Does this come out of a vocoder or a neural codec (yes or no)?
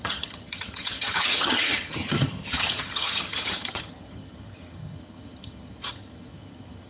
yes